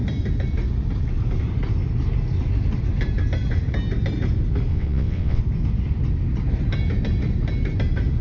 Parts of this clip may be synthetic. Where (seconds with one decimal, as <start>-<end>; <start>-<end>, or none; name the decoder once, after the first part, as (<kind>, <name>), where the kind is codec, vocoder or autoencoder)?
4.7-5.4 (vocoder, WaveNeXt)